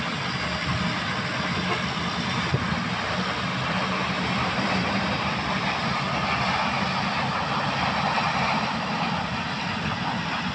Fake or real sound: real